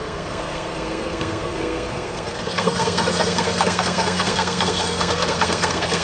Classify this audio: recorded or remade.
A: remade